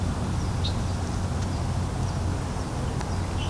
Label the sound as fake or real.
real